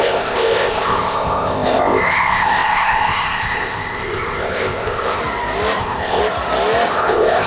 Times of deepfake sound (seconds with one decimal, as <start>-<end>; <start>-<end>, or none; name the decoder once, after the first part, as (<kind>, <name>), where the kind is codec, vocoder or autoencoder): 0.0-5.2 (codec, ZipCodec); 5.8-6.2; 6.9-7.5